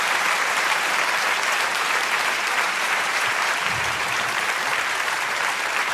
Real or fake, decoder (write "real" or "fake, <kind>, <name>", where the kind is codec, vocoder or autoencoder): fake, vocoder, BigVGAN v2